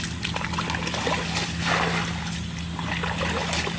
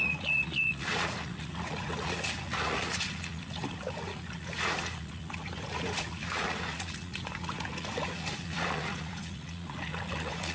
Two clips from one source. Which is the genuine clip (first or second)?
first